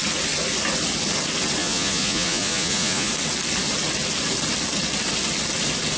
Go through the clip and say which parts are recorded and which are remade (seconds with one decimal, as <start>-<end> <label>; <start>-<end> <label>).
0.0-1.6 recorded; 1.6-3.1 remade; 3.1-6.0 recorded